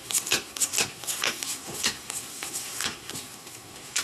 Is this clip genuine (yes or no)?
no